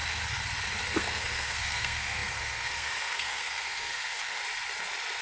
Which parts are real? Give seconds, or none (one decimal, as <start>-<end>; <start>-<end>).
0.0-1.0; 4.4-5.2